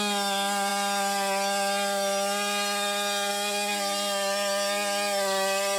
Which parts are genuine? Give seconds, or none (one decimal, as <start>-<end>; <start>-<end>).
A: 0.0-5.8